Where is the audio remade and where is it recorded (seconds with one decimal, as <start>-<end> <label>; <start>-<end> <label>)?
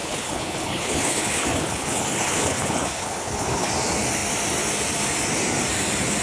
0.0-3.7 remade; 3.7-6.2 recorded